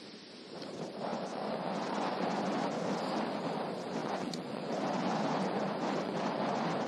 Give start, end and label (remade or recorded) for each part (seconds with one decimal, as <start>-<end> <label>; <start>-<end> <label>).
0.0-1.1 recorded; 1.1-2.8 remade; 2.8-4.0 recorded; 4.0-6.9 remade